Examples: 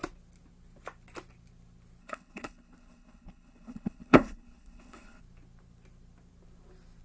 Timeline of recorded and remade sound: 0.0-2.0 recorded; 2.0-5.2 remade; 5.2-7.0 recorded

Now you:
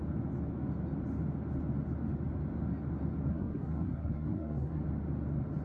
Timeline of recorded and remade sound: 0.0-3.3 recorded; 3.3-4.8 remade; 4.8-5.6 recorded